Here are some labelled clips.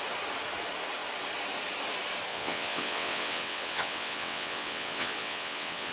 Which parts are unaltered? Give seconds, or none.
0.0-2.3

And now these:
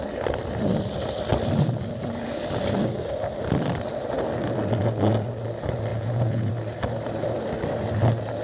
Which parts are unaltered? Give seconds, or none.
0.0-5.9; 6.5-8.4

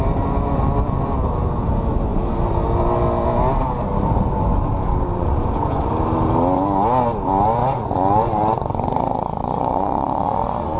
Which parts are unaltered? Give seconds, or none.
0.0-5.1; 5.9-7.6

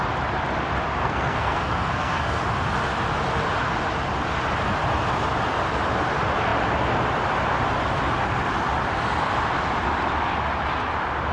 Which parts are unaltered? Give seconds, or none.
0.0-1.0; 2.4-11.3